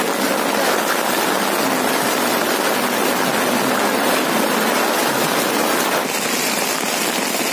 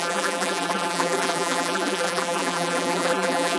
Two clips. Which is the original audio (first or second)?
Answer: first